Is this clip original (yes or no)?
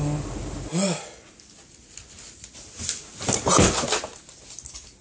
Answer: yes